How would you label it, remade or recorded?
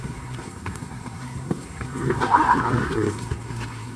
remade